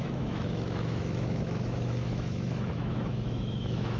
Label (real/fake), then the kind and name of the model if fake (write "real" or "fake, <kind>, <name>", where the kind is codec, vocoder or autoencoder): fake, autoencoder, DAC-VAE